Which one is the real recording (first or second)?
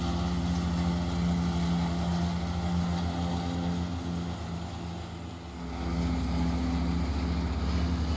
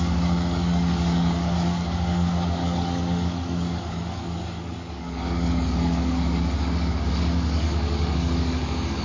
first